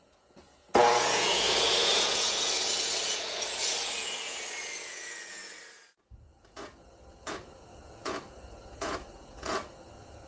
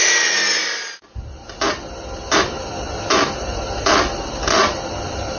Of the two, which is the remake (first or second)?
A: first